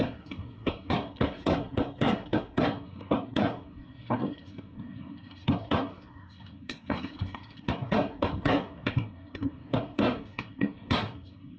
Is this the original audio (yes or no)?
no